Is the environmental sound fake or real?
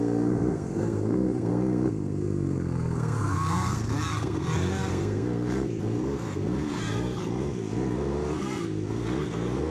fake